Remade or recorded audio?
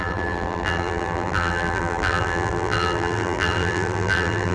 remade